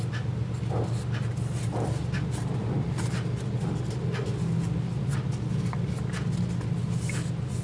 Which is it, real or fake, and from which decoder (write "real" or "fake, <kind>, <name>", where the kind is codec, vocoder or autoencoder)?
real